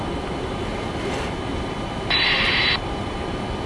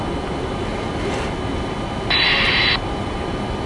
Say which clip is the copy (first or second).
first